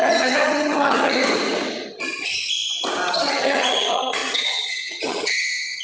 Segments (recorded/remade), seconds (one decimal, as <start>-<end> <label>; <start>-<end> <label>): 0.0-1.2 remade; 1.2-3.1 recorded; 3.1-5.8 remade

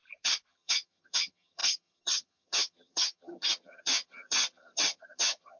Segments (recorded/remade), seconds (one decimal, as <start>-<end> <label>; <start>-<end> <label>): 0.0-0.5 recorded; 0.5-5.6 remade

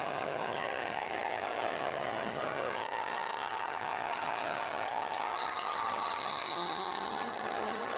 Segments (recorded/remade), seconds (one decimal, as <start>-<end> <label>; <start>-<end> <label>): 0.0-8.0 remade

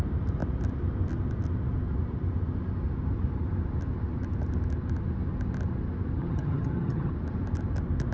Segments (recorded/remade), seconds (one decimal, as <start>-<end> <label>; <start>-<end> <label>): 0.0-6.2 recorded; 6.2-7.1 remade; 7.1-8.1 recorded